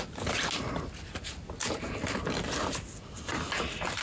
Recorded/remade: recorded